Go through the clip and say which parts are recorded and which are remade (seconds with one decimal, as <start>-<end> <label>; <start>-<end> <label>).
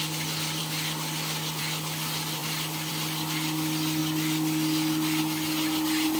0.0-6.2 recorded